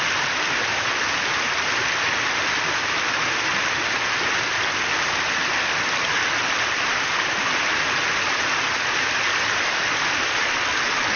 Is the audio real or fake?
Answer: real